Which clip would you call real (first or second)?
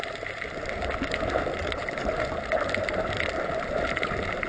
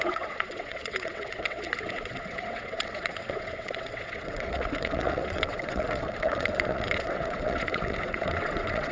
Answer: first